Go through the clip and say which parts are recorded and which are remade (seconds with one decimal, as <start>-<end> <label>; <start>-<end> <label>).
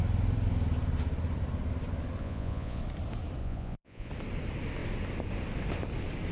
0.0-2.2 recorded; 2.2-2.8 remade; 2.8-3.4 recorded; 3.4-4.1 remade; 4.1-6.3 recorded